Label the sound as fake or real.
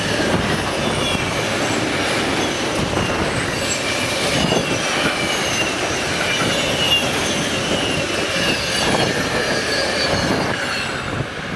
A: real